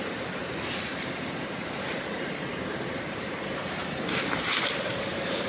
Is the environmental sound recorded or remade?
remade